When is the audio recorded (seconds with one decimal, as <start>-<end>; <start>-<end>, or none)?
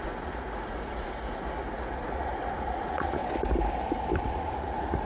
3.2-4.3